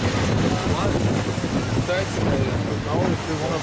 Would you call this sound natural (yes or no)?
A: yes